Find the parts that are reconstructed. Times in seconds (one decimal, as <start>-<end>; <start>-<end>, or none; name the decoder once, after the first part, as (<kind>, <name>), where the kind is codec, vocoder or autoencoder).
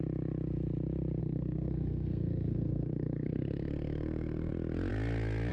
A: 1.2-4.5 (codec, SNAC)